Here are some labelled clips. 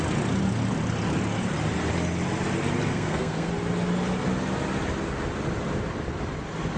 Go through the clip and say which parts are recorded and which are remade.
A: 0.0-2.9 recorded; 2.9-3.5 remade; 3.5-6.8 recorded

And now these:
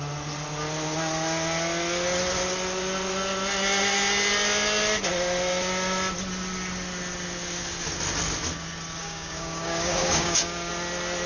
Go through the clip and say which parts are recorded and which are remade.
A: 0.0-9.0 recorded; 9.0-10.7 remade; 10.7-11.3 recorded

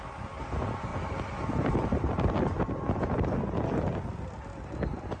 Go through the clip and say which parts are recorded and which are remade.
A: 0.0-5.2 recorded

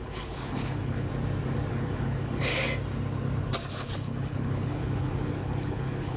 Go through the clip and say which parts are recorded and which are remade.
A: 0.0-1.1 remade; 1.1-1.7 recorded; 1.7-2.5 remade; 2.5-3.7 recorded; 3.7-6.2 remade

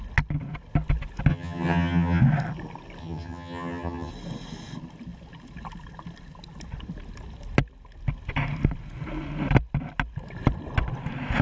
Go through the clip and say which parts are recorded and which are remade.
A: 0.0-1.3 recorded; 1.3-2.2 remade; 2.2-3.0 recorded; 3.0-4.1 remade; 4.1-11.4 recorded

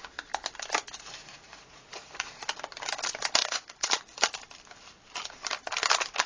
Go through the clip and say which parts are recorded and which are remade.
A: 0.0-1.2 recorded; 1.2-2.4 remade; 2.4-3.4 recorded; 3.4-3.9 remade; 3.9-6.3 recorded

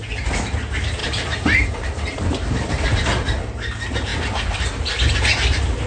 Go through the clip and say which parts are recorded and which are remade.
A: 0.0-1.0 recorded; 1.0-2.7 remade; 2.7-4.1 recorded; 4.1-4.8 remade; 4.8-5.9 recorded

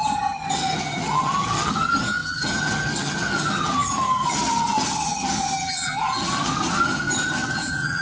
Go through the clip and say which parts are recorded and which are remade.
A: 0.0-8.0 remade